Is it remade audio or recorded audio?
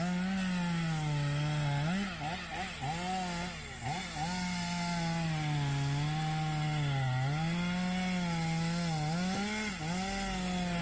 recorded